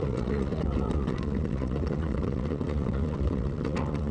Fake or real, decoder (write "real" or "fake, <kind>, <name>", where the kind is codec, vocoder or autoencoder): fake, vocoder, WaveNeXt